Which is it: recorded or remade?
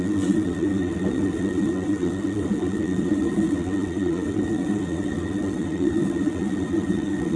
remade